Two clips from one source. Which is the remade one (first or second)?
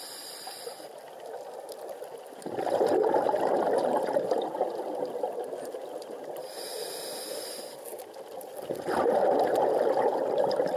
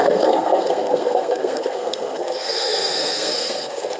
second